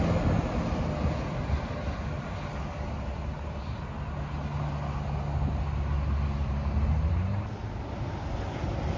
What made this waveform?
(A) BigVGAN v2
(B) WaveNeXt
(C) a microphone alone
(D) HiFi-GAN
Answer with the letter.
C